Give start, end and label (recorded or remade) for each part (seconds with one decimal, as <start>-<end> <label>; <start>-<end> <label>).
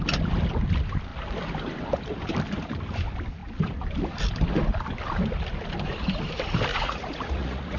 0.0-6.7 recorded; 6.7-7.8 remade